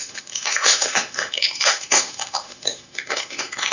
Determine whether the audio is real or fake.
fake